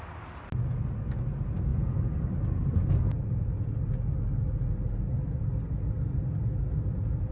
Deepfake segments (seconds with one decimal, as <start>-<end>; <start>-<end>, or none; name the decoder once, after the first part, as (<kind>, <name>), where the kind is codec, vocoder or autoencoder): none